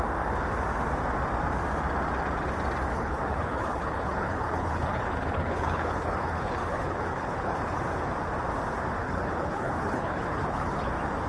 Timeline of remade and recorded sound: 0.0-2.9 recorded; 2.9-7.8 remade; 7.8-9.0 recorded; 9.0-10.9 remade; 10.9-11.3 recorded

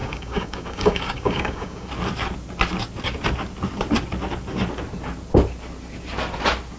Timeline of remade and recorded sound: 0.0-1.9 remade; 1.9-6.8 recorded